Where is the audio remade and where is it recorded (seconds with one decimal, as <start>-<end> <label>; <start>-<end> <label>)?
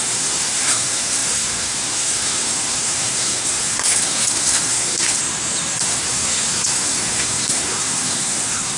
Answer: 0.0-5.2 remade; 5.2-5.8 recorded; 5.8-8.8 remade